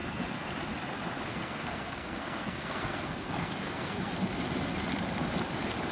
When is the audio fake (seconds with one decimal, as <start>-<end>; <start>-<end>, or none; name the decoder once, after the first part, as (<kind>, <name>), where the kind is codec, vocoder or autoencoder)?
0.0-0.5 (codec, SNAC); 1.3-4.1